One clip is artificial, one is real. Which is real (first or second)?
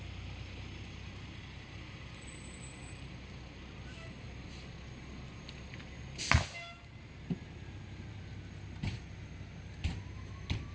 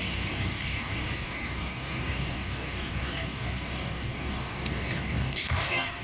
first